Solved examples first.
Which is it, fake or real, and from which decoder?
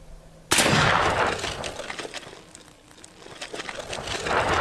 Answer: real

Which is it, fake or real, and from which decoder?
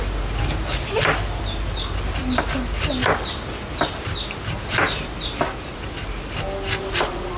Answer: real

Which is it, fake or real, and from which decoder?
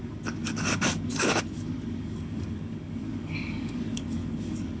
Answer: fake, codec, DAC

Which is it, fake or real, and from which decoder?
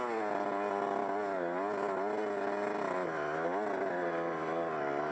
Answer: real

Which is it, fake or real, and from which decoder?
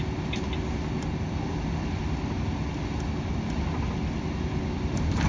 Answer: real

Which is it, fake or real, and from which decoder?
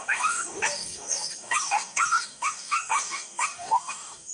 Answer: fake, codec, DAC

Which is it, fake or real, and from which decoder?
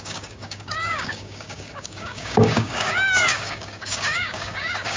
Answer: fake, codec, DAC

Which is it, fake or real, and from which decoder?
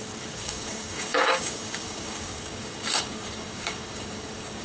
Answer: fake, codec, DAC